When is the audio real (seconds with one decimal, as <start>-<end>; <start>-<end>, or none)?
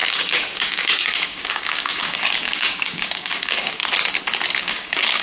3.8-4.6